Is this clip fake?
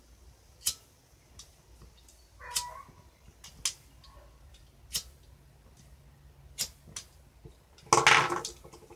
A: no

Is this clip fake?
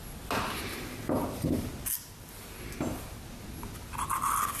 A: no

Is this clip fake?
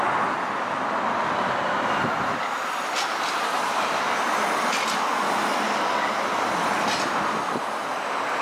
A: no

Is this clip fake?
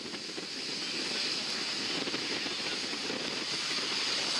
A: no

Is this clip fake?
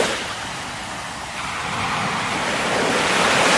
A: no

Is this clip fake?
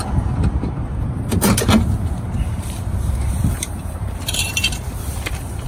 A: yes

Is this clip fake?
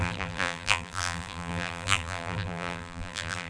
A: yes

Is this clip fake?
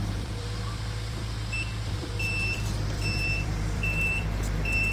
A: yes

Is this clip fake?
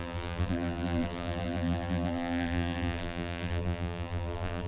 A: yes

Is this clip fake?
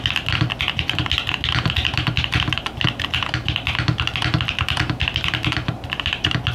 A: no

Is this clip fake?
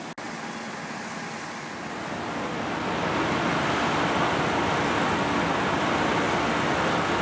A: no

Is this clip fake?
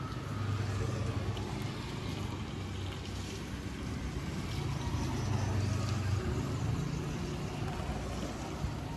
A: no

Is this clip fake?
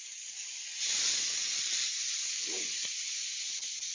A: yes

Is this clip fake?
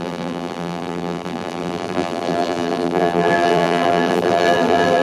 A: yes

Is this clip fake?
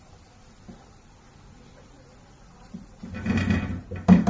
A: no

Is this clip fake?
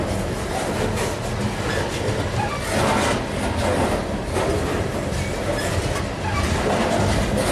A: no